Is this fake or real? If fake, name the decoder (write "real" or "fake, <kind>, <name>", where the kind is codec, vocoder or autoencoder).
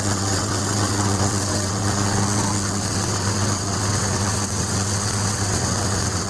fake, vocoder, WaveNeXt